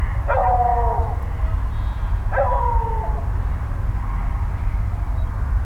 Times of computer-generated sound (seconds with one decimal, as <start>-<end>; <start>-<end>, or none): none